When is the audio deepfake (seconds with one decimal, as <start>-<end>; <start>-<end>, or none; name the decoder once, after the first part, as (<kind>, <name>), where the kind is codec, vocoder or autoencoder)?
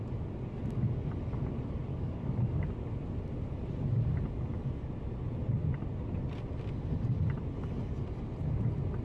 1.9-2.7 (codec, DAC)